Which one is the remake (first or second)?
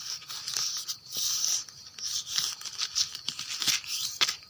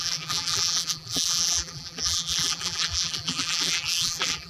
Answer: second